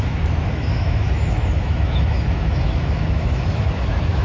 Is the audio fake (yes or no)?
yes